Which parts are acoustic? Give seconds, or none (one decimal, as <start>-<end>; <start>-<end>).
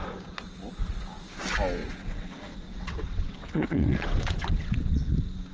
0.0-1.8; 5.1-5.5